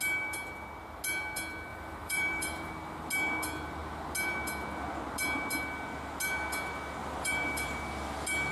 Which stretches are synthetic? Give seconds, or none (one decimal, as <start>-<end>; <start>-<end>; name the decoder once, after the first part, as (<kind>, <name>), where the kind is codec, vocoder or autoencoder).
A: 1.7-2.7 (vocoder, BigVGAN v2); 7.0-7.8